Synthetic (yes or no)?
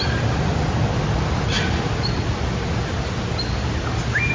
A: no